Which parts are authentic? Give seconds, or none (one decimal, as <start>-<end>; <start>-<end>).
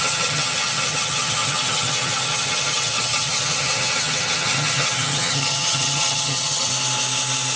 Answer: 6.7-7.6